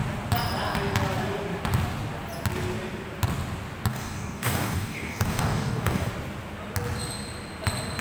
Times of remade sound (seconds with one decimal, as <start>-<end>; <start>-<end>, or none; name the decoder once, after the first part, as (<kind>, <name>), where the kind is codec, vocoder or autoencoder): 3.9-6.1 (codec, DAC)